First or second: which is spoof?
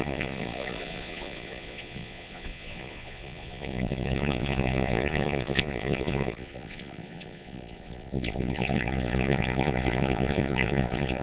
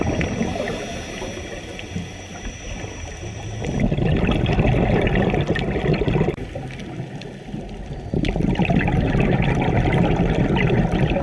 first